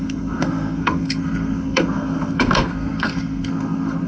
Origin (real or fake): fake